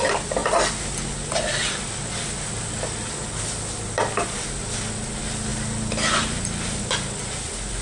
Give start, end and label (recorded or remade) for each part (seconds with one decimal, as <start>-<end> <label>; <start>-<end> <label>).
0.0-7.8 recorded